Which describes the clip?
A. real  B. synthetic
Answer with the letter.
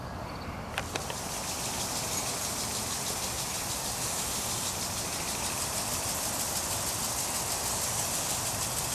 A